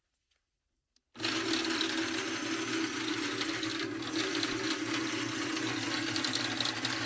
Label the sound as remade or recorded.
recorded